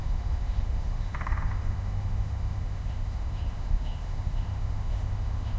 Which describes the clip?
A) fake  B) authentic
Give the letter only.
A